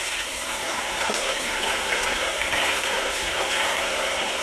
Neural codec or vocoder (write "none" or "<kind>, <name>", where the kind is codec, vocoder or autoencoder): codec, SNAC